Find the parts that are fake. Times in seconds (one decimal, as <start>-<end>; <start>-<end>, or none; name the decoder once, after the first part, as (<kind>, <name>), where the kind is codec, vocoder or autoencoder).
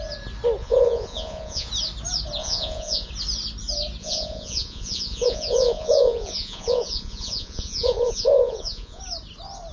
0.6-1.7 (vocoder, Vocos); 2.4-3.1; 4.0-9.0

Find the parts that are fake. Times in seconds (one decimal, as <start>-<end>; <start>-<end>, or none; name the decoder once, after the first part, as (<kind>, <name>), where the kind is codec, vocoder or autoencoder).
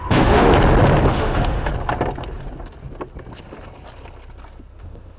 0.0-0.5 (autoencoder, DAC-VAE); 1.1-1.7; 4.8-5.2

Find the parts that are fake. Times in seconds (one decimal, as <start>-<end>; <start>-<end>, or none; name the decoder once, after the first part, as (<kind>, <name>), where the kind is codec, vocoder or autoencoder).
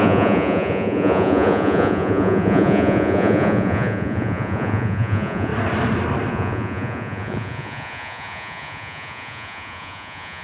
0.0-5.5 (vocoder, Vocos); 6.3-10.4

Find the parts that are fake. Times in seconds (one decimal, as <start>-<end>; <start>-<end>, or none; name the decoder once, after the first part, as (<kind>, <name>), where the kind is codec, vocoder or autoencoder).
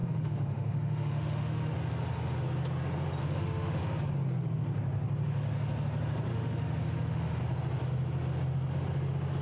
0.0-1.7 (autoencoder, DAC-VAE); 3.2-3.8; 6.3-7.4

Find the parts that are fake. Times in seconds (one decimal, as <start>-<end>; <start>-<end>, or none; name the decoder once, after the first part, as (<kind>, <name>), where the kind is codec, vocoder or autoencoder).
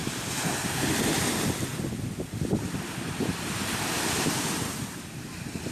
none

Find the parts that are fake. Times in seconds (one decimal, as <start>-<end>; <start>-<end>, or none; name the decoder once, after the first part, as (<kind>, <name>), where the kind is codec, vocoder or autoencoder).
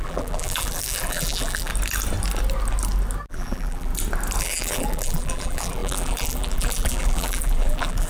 0.0-1.7 (vocoder, BigVGAN v2); 3.3-3.9; 4.4-8.1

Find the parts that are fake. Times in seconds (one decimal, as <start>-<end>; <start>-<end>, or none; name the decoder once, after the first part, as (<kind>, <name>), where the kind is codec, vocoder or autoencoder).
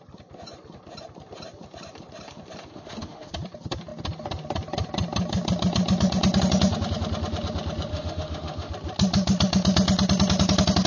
2.7-3.3 (autoencoder, DAC-VAE); 7.9-8.7